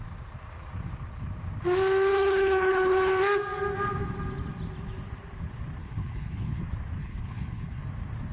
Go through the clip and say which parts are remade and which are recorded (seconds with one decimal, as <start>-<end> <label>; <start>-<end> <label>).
0.0-2.1 recorded; 2.1-3.1 remade; 3.1-5.8 recorded; 5.8-6.6 remade; 6.6-7.0 recorded; 7.0-7.8 remade; 7.8-8.3 recorded